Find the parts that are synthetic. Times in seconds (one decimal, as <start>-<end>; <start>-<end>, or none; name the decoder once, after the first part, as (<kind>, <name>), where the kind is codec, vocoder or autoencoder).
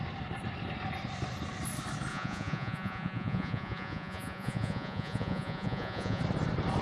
2.1-6.2 (vocoder, Vocos)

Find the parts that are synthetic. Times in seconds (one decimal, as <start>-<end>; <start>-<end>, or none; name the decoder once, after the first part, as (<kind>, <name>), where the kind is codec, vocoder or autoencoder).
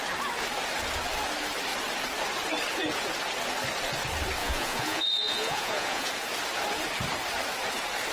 4.4-6.1 (vocoder, Vocos)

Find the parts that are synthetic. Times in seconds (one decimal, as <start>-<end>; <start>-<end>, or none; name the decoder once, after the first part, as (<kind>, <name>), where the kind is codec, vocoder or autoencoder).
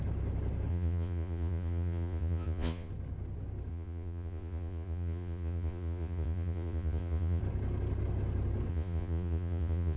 0.7-2.9 (vocoder, Vocos); 3.7-7.4; 8.7-10.0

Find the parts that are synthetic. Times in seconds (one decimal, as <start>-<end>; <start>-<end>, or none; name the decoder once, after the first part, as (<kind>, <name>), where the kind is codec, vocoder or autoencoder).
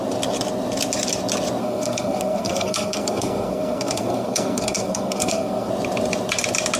1.6-5.7 (codec, SNAC)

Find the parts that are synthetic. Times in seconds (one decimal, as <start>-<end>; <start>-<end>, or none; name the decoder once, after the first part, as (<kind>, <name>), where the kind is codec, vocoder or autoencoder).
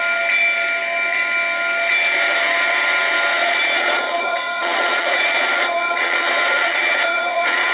3.3-7.7 (vocoder, Vocos)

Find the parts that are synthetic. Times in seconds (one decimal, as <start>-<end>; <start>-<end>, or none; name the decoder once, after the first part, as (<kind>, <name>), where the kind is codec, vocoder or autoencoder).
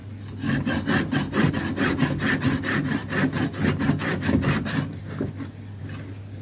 none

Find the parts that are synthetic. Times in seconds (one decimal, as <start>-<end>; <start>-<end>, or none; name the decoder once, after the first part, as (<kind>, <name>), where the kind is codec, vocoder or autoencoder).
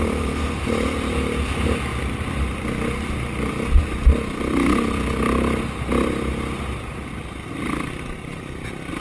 none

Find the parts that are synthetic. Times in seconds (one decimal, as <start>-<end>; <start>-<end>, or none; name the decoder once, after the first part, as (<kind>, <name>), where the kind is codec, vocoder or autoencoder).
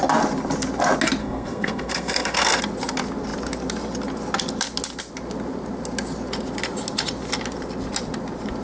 1.2-2.6 (codec, SNAC)